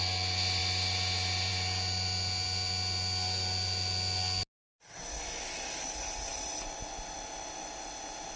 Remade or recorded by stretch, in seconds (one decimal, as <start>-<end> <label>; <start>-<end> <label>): 0.0-8.4 recorded